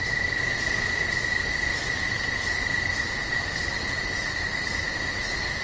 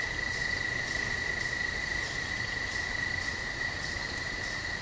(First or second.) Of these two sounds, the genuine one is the second